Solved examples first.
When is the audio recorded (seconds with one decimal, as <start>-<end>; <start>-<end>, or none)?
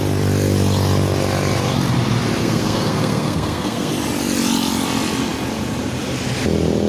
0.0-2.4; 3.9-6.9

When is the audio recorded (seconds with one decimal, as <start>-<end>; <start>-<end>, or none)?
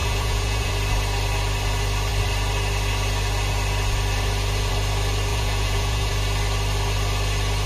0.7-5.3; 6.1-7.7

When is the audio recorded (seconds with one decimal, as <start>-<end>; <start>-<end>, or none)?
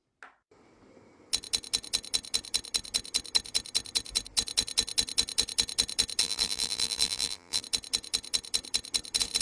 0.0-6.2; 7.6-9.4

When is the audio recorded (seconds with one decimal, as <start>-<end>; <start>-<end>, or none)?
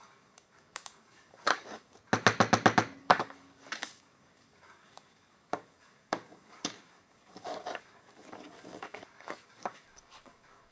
2.0-3.0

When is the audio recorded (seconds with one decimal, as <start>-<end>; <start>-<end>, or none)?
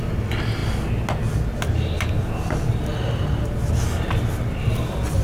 0.0-5.2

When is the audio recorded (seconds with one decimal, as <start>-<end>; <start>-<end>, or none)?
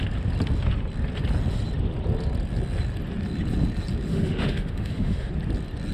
0.0-4.1; 5.3-5.9